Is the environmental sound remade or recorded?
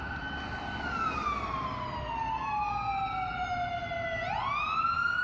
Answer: recorded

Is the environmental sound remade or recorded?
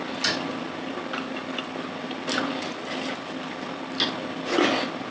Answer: recorded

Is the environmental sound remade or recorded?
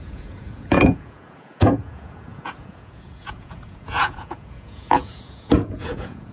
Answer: remade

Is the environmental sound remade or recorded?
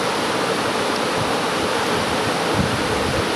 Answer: recorded